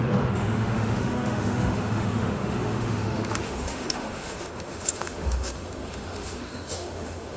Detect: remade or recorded remade